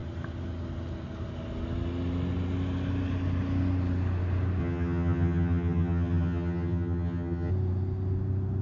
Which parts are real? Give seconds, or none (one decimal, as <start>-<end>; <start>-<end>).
0.0-4.6; 7.5-8.6